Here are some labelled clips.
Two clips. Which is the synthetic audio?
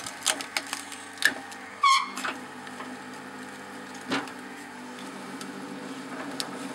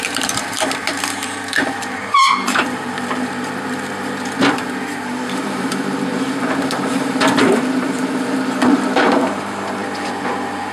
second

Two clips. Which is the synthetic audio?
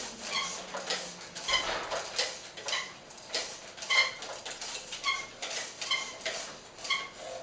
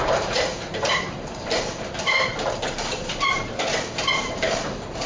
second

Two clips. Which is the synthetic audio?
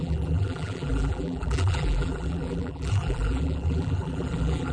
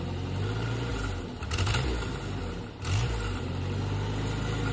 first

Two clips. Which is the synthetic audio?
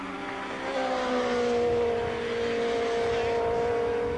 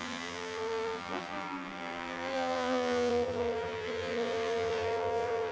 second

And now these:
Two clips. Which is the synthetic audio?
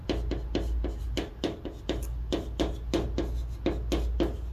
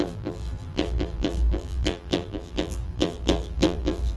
second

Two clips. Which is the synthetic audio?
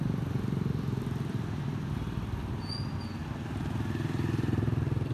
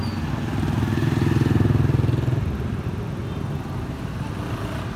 first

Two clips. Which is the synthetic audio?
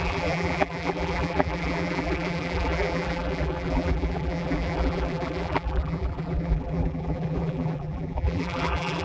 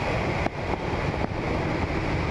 first